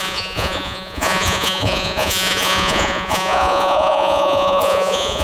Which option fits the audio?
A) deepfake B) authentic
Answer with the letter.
A